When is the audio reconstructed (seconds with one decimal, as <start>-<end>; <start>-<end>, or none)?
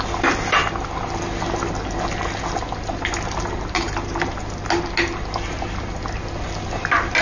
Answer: none